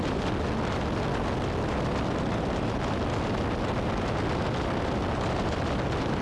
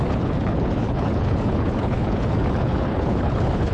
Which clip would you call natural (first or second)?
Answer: first